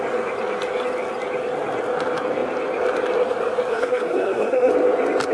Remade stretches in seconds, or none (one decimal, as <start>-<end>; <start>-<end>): 3.7-4.7